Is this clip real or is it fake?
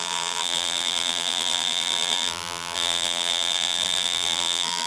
fake